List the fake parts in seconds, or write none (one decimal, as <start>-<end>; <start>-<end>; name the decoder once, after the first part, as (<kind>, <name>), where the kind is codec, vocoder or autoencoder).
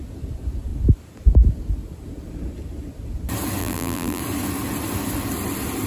3.6-4.2 (vocoder, BigVGAN v2)